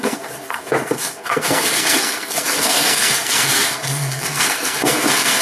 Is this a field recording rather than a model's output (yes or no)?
no